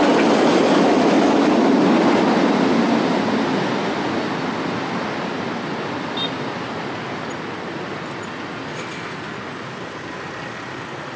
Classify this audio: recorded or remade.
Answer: recorded